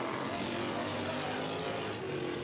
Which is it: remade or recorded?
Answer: recorded